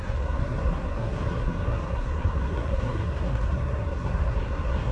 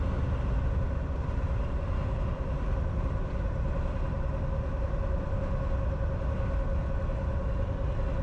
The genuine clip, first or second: second